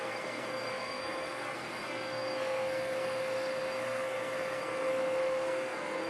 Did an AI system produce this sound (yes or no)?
yes